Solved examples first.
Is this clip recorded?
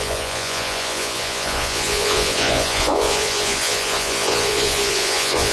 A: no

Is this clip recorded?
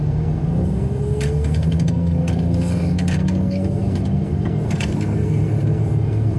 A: no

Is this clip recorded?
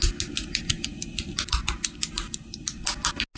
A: yes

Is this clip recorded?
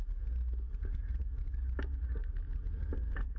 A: yes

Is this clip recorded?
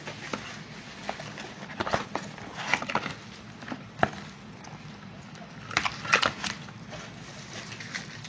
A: yes